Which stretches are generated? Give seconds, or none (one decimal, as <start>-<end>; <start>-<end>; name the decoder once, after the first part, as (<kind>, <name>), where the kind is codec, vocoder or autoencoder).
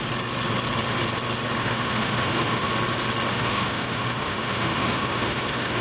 1.6-2.7 (autoencoder, DAC-VAE); 3.3-5.8